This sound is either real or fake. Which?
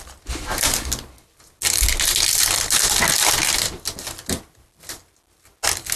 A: real